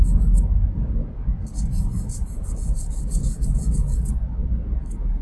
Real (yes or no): yes